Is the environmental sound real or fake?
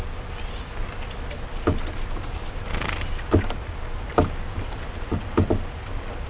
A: real